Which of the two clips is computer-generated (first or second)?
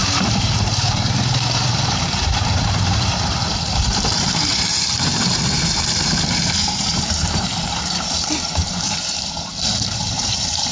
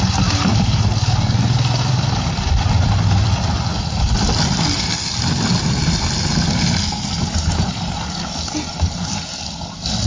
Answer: first